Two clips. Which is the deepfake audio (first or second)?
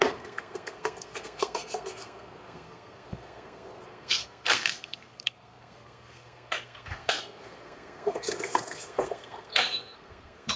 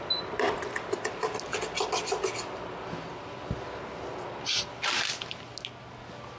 first